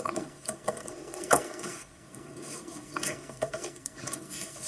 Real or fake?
fake